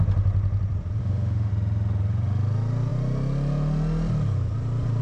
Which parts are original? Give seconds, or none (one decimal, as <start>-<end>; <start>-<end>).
0.0-1.0; 1.5-5.0